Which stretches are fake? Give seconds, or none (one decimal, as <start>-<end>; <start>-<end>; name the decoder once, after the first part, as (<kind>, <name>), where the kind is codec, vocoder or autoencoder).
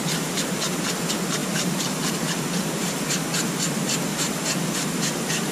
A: 1.4-2.1 (vocoder, BigVGAN v2); 4.1-5.5